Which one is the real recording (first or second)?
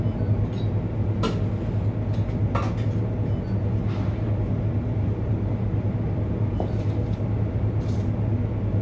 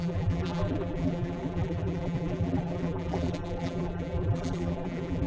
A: first